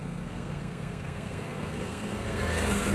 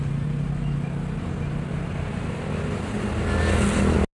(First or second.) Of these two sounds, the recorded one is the second